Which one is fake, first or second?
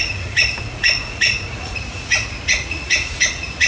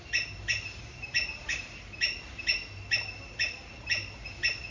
first